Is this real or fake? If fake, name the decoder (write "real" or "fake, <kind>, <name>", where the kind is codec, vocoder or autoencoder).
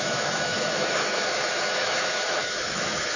fake, autoencoder, DAC-VAE